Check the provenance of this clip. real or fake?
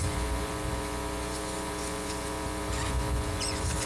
fake